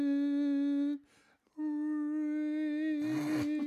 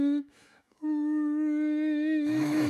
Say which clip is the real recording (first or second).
first